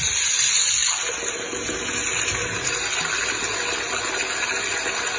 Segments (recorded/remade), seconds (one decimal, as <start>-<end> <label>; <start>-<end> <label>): 0.0-5.2 recorded